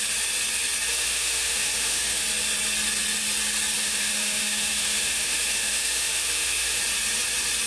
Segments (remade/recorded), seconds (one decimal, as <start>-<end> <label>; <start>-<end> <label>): 0.0-0.9 recorded; 0.9-2.2 remade; 2.2-3.8 recorded; 3.8-6.8 remade; 6.8-7.7 recorded